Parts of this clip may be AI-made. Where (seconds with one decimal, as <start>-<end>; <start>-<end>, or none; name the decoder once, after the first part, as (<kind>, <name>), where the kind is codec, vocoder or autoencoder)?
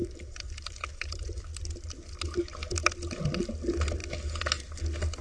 0.0-1.4 (vocoder, BigVGAN v2)